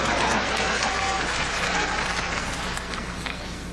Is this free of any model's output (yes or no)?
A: no